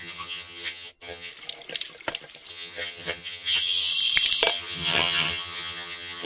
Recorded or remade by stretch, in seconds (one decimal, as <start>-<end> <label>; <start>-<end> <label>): 0.0-1.3 remade; 1.3-2.5 recorded; 2.5-3.9 remade; 3.9-4.5 recorded; 4.5-6.2 remade